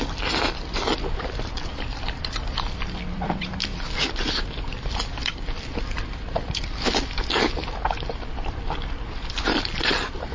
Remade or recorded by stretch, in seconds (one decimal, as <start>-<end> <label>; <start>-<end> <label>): 0.0-10.3 remade